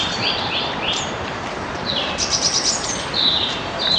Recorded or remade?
remade